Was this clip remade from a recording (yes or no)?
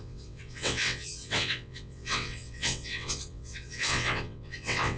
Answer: yes